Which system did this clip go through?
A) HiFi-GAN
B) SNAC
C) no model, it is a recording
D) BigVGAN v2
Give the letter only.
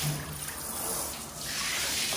C